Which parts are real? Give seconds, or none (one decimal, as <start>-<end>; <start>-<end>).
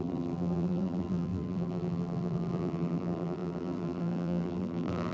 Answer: none